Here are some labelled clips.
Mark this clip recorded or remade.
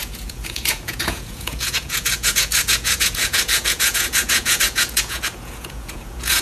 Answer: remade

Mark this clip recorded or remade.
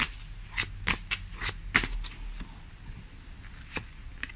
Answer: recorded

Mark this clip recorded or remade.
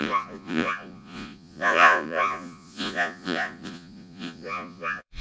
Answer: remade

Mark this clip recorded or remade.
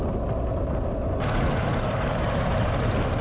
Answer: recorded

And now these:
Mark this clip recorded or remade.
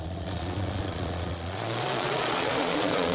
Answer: remade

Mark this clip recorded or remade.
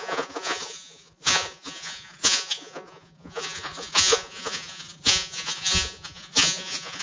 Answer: remade